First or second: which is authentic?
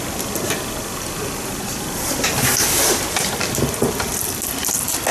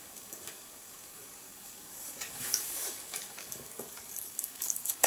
first